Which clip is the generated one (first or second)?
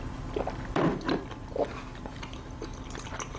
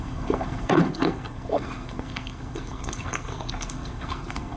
second